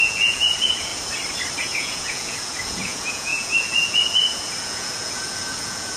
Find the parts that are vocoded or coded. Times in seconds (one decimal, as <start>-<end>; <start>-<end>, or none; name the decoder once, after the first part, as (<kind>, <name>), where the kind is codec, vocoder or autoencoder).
0.0-0.9 (vocoder, Vocos); 1.6-6.0